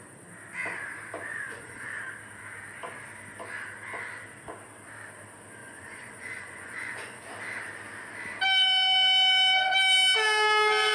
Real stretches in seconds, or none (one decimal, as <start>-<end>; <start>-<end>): 0.0-1.3; 2.0-5.6; 7.2-10.9